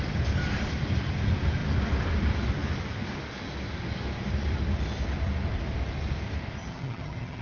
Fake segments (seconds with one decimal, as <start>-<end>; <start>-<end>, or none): 6.6-7.4